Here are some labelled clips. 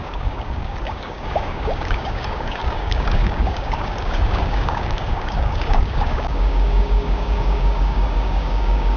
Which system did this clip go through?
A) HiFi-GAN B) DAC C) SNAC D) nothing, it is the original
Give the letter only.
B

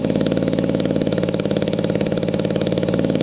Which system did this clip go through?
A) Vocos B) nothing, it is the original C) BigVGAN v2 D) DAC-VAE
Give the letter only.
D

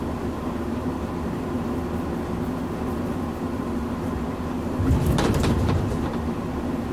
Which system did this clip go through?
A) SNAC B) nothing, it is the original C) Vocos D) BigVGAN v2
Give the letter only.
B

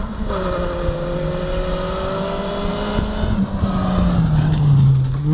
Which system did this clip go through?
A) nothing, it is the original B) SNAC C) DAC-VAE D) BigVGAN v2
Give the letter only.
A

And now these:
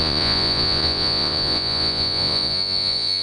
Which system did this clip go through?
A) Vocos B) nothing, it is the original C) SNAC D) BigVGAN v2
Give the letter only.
A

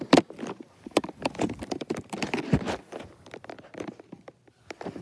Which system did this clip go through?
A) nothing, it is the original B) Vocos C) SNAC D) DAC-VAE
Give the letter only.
A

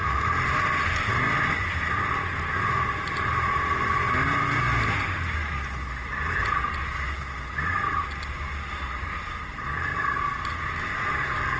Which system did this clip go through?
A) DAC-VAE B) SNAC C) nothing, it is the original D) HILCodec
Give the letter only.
C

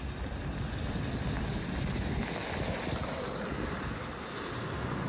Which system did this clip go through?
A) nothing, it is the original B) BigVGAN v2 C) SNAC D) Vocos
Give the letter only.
A